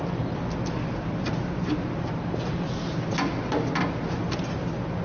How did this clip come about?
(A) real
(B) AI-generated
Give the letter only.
A